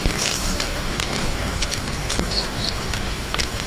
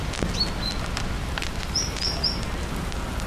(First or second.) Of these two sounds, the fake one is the first